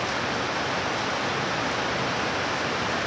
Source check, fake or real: real